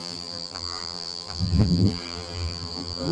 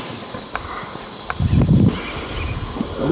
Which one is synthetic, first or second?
first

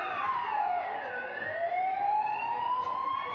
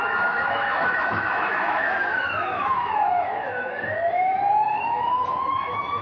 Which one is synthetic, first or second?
second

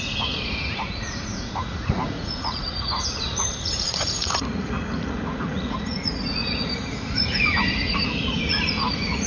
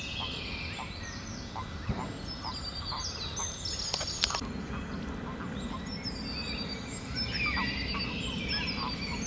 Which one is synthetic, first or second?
first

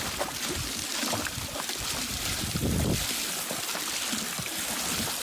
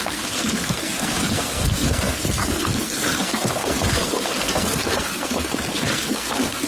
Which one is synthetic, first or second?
second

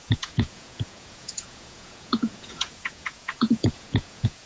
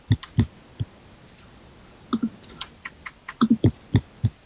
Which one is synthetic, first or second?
first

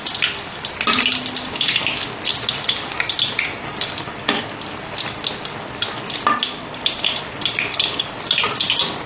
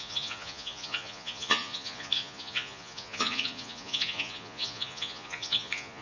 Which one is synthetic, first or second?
second